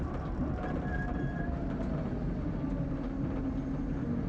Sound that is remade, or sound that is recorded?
recorded